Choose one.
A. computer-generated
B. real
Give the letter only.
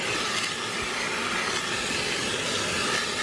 B